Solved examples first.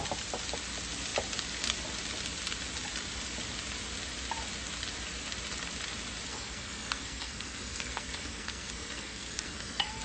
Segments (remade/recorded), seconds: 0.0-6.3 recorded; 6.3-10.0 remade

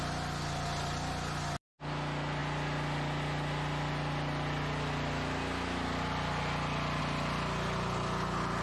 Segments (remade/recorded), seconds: 0.0-8.6 recorded

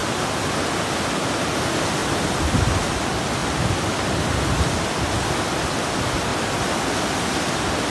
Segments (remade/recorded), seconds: 0.0-7.9 recorded

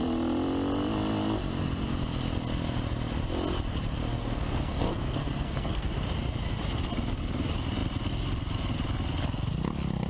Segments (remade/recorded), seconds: 0.0-4.2 recorded; 4.2-5.9 remade; 5.9-10.1 recorded